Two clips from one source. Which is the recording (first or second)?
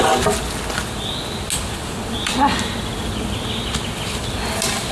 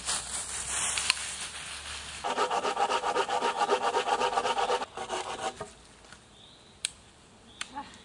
first